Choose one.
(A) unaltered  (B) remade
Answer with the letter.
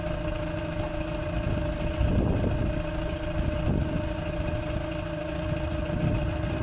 A